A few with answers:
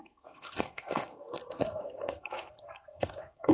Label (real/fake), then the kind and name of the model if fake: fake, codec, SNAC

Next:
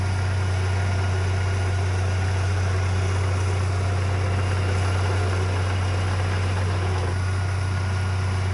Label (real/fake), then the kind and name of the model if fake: real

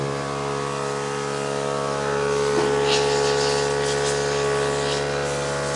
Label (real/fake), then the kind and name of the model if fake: real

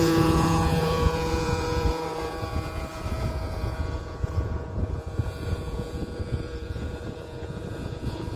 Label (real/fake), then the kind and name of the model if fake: fake, vocoder, Vocos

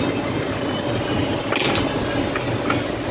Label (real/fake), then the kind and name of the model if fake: real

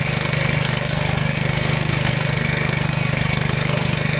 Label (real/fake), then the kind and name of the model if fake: fake, codec, SNAC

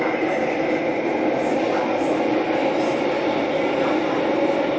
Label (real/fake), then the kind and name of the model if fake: real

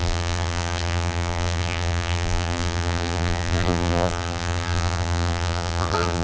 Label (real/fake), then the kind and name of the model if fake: fake, vocoder, BigVGAN v2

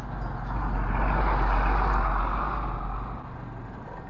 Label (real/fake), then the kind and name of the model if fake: real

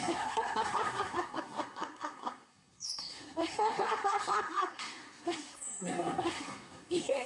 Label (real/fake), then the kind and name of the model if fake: fake, codec, SNAC